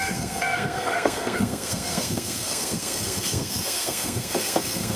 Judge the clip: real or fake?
fake